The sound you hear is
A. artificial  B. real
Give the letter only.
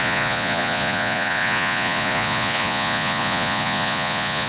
A